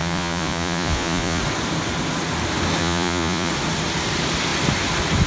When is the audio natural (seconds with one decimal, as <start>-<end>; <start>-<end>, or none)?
1.4-2.8; 3.5-5.3

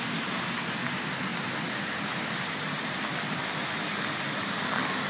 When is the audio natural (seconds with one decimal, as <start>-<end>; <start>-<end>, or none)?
0.0-5.1

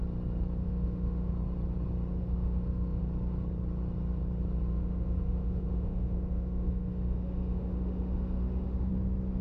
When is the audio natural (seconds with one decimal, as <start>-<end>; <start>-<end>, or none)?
0.0-0.6; 1.3-2.1; 3.0-4.7; 8.9-9.4

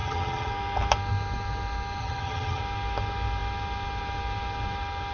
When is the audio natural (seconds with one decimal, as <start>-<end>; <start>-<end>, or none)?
0.5-2.0; 2.6-5.1

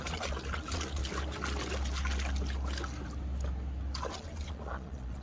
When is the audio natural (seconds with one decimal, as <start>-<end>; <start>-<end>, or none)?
1.0-4.1

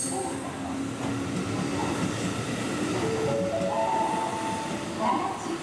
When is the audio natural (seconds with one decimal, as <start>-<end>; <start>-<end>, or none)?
0.0-5.6